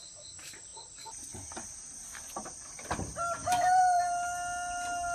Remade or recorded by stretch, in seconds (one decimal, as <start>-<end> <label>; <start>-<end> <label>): 0.0-3.4 recorded; 3.4-4.0 remade; 4.0-5.1 recorded